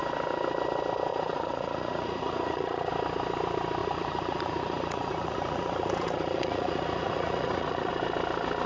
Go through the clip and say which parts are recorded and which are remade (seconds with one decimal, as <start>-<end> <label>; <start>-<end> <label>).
0.0-1.1 recorded; 1.1-2.9 remade; 2.9-3.8 recorded; 3.8-7.9 remade; 7.9-8.7 recorded